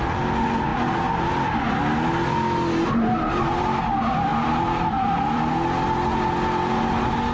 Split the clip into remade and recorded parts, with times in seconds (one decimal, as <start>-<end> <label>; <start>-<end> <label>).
0.0-4.3 recorded; 4.3-5.5 remade; 5.5-7.3 recorded